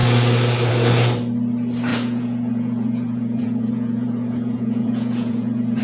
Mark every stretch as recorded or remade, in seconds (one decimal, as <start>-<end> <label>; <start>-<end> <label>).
0.0-1.9 recorded; 1.9-5.8 remade